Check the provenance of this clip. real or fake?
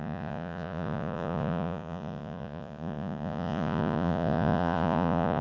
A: fake